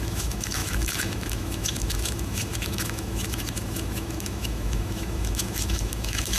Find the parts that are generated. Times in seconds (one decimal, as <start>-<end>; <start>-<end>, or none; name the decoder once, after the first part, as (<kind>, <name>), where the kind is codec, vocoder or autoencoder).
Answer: 0.0-6.4 (autoencoder, DAC-VAE)